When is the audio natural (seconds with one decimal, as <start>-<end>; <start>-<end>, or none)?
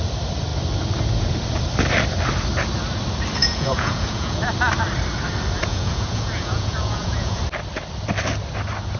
0.0-3.4; 4.4-5.7; 7.4-9.0